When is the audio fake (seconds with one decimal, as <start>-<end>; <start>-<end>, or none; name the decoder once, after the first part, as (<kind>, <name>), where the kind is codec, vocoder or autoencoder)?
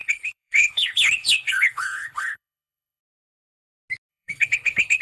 0.0-3.0 (codec, HILCodec); 4.1-5.0